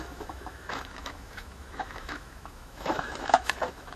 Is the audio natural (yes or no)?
no